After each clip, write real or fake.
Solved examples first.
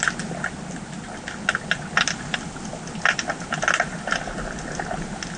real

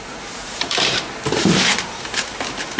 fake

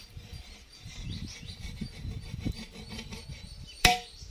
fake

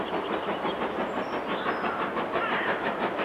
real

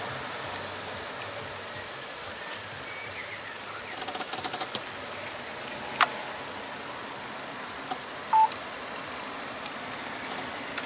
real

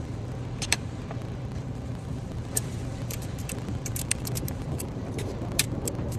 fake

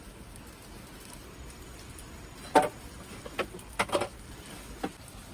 real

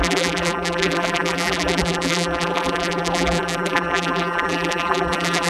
fake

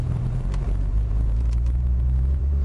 fake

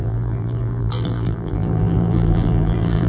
fake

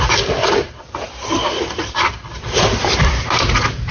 fake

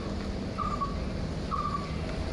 real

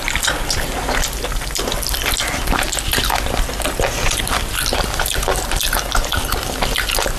real